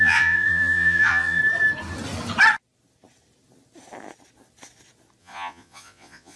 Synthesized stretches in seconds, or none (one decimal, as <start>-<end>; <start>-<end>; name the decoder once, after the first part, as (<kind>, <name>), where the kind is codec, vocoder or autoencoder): 0.0-1.4 (vocoder, Vocos); 5.2-6.4